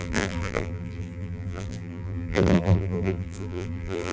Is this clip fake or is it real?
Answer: fake